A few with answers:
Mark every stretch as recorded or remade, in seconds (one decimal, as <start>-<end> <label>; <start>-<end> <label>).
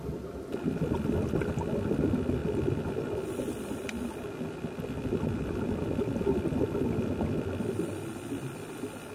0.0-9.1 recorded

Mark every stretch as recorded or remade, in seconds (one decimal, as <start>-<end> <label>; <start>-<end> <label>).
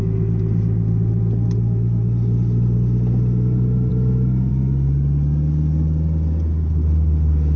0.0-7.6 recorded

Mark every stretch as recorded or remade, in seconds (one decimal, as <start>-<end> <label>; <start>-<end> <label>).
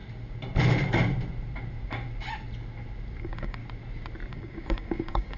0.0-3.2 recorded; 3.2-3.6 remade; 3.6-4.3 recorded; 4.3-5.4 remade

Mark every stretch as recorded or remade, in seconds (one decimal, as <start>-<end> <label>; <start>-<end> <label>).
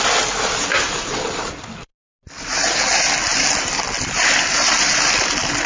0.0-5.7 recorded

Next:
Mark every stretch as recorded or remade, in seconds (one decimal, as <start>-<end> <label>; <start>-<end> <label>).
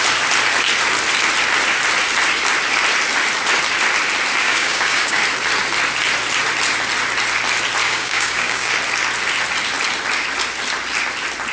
0.0-4.4 recorded; 4.4-5.2 remade; 5.2-7.8 recorded; 7.8-8.7 remade; 8.7-11.5 recorded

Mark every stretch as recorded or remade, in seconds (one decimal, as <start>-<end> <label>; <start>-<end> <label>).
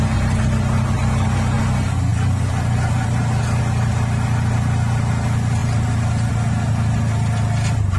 0.0-8.0 recorded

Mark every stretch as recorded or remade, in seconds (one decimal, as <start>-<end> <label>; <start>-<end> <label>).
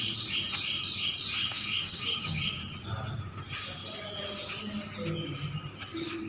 0.0-1.4 recorded; 1.4-2.6 remade; 2.6-6.3 recorded